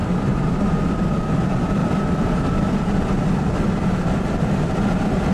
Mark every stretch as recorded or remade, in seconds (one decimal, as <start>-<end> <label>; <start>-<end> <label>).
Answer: 0.0-1.2 remade; 1.2-1.8 recorded; 1.8-5.3 remade